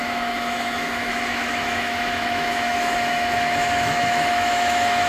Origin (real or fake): fake